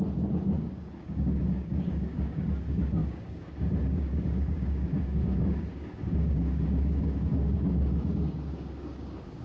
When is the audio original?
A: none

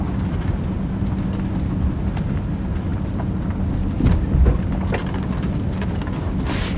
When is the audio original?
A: 0.0-6.8

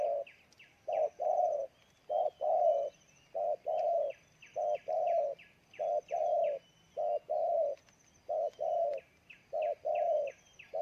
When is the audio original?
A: 0.0-10.8

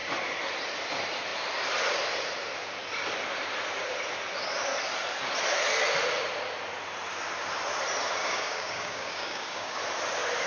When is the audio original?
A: 0.0-8.2; 9.8-10.5

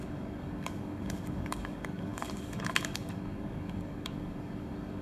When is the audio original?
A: none

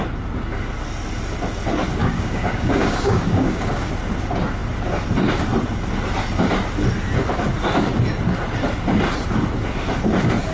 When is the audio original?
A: 0.0-2.0; 3.9-10.5